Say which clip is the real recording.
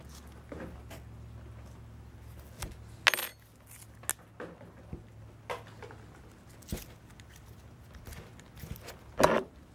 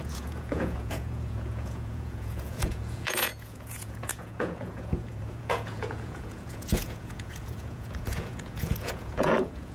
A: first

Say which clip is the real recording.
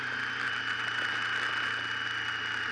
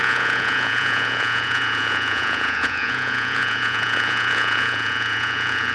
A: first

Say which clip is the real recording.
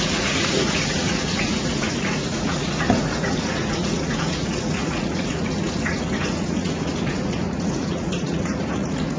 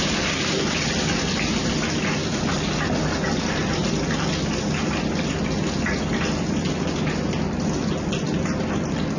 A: second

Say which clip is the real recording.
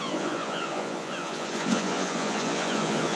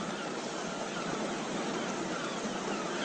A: second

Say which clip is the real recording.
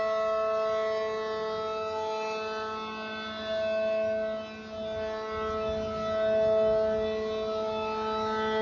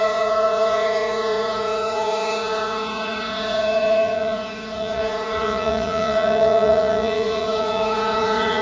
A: first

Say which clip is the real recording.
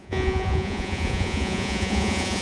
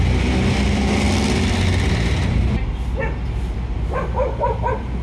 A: second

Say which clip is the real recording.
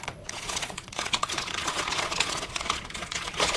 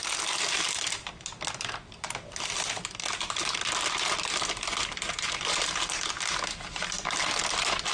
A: second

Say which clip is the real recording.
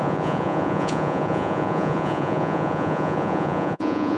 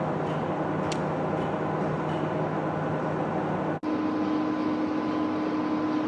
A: second